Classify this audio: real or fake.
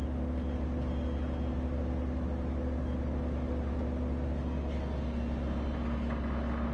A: real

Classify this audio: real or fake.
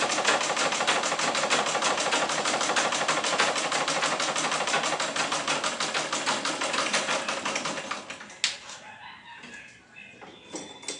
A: real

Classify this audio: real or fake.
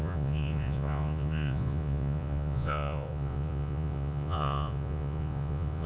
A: fake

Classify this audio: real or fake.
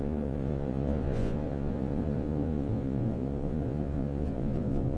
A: fake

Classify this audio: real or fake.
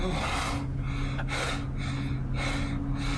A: real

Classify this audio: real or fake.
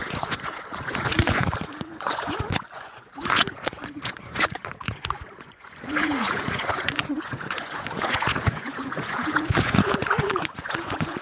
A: fake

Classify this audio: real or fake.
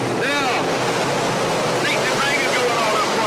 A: real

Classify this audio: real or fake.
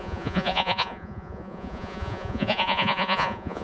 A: fake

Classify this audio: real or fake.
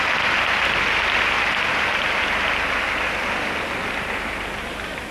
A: real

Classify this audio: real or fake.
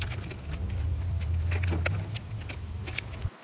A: real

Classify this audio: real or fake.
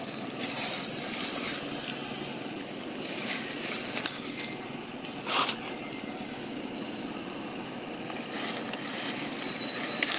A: real